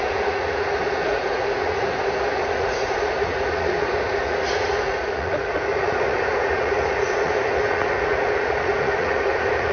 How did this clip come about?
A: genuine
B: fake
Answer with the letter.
B